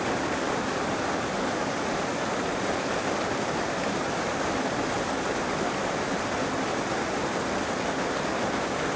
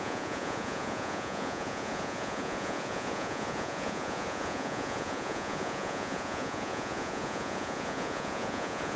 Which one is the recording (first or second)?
first